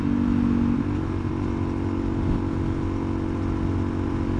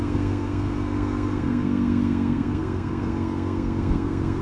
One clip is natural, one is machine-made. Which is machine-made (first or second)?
second